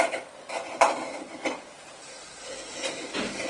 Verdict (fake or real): real